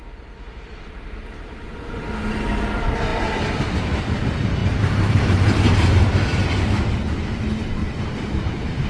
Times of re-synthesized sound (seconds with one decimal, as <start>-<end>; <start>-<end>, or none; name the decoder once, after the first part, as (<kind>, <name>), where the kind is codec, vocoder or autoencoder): 4.6-5.2 (vocoder, BigVGAN v2); 7.8-8.9